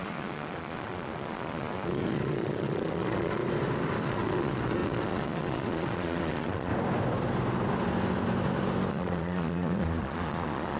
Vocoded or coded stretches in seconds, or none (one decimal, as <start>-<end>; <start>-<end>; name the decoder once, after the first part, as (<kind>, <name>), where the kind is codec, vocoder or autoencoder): 0.0-3.4 (vocoder, Vocos); 4.0-6.7; 8.9-10.8